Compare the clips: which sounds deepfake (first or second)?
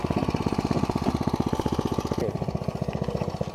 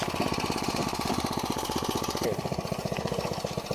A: second